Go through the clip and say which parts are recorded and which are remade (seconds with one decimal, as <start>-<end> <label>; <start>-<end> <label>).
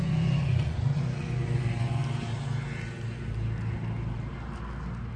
0.0-2.0 remade; 2.0-5.2 recorded